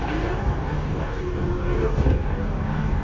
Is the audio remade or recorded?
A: remade